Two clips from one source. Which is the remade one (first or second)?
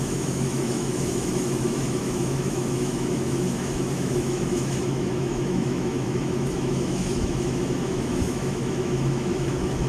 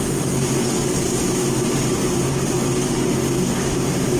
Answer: first